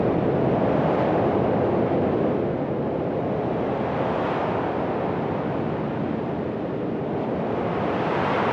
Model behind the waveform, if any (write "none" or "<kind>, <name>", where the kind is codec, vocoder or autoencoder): none